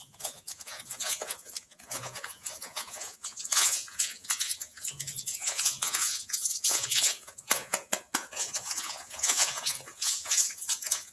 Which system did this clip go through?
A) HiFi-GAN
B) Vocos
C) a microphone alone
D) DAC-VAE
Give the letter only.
B